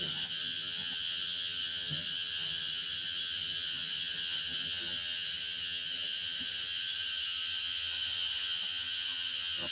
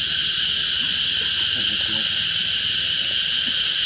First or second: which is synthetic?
first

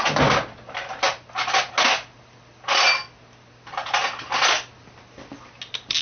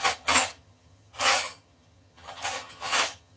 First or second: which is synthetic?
second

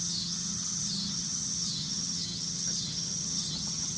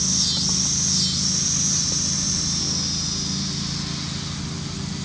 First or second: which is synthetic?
first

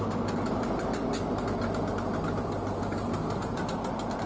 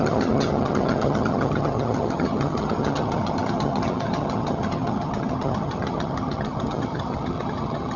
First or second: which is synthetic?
second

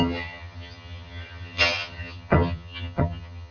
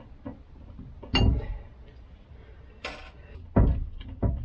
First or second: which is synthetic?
first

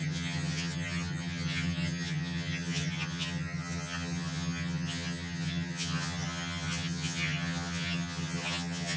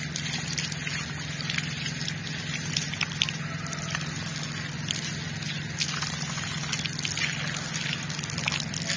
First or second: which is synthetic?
first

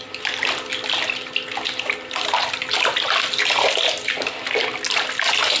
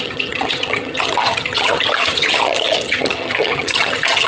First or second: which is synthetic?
second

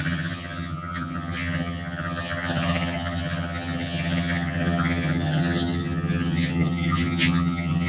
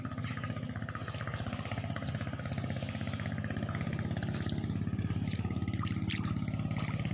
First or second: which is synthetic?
first